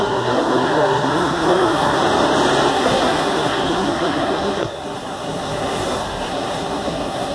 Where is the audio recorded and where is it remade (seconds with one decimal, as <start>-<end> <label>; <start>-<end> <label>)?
0.0-2.0 remade; 2.0-2.7 recorded; 2.7-7.3 remade